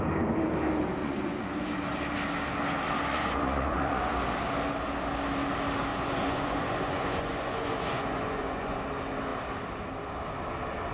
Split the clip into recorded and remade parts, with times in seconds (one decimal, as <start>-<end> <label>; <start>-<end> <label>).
0.0-1.0 recorded; 1.0-1.5 remade; 1.5-3.1 recorded; 3.1-4.1 remade; 4.1-5.9 recorded; 5.9-8.8 remade; 8.8-10.9 recorded